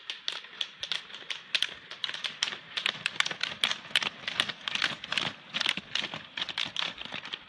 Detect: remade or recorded recorded